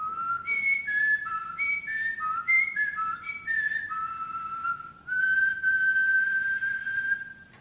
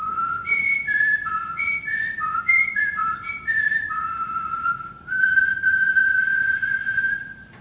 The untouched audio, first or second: first